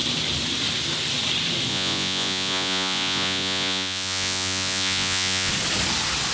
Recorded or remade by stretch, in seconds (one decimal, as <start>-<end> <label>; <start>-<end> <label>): 0.0-1.7 recorded; 1.7-5.5 remade; 5.5-6.3 recorded